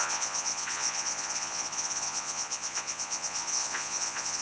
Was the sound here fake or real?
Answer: fake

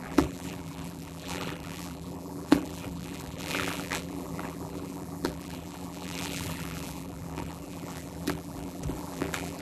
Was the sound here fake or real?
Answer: fake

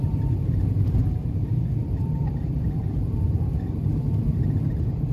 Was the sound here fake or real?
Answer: fake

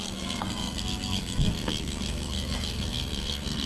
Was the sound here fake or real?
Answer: fake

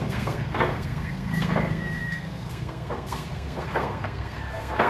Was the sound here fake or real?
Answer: fake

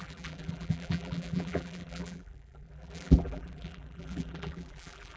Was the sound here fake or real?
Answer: fake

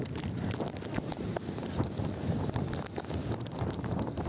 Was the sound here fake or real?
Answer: fake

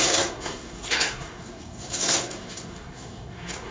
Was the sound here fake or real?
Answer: fake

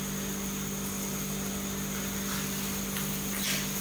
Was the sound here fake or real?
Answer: real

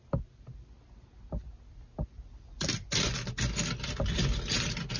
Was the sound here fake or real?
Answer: real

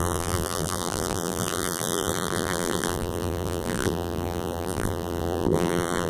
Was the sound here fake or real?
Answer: fake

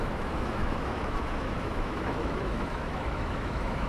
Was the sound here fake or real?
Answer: fake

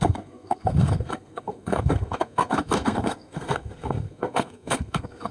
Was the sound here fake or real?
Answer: fake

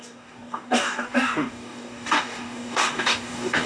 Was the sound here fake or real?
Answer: fake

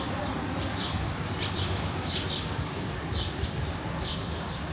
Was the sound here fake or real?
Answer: fake